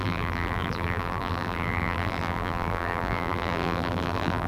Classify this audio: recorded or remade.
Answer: remade